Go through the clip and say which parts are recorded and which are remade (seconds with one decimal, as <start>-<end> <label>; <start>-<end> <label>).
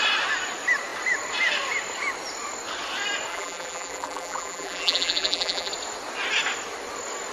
0.0-3.3 recorded; 3.3-5.7 remade; 5.7-7.3 recorded